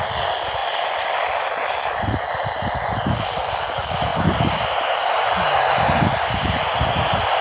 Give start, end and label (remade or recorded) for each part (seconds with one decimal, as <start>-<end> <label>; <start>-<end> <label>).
0.0-7.4 recorded